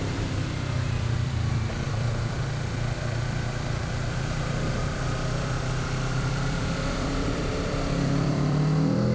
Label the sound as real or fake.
fake